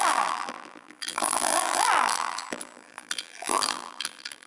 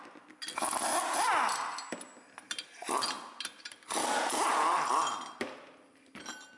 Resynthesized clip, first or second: first